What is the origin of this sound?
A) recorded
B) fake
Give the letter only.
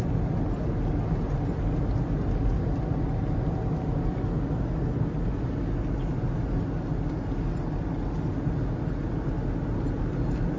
A